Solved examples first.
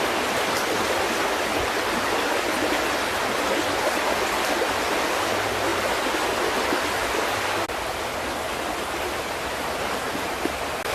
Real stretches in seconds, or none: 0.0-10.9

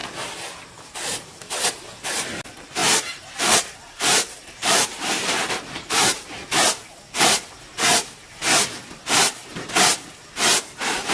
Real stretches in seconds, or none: 0.0-2.8; 6.5-11.1

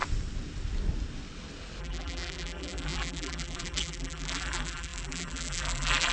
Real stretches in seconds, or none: 0.0-1.8

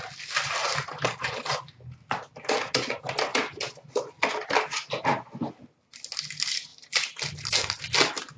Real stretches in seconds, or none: 0.0-6.7; 7.5-8.4

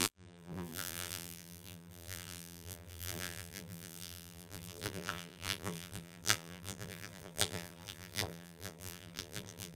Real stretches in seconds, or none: none

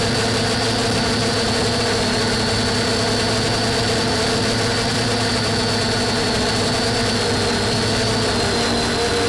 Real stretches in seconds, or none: 0.0-4.9; 5.5-9.3